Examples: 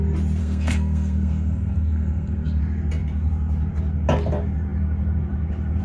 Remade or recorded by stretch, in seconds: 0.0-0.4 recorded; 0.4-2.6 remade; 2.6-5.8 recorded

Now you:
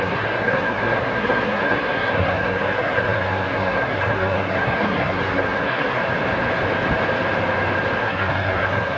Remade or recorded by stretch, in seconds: 0.0-6.0 remade; 6.0-8.0 recorded; 8.0-9.0 remade

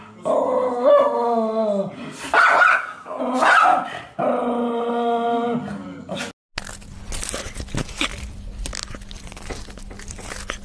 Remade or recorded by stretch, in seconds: 0.0-2.7 recorded; 2.7-3.2 remade; 3.2-10.6 recorded

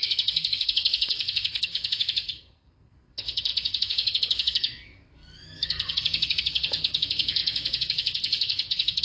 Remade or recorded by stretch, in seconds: 0.0-9.0 remade

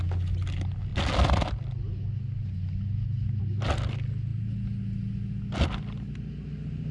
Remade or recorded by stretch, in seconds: 0.0-6.9 recorded

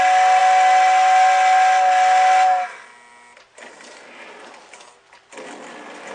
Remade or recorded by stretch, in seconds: 0.0-6.1 recorded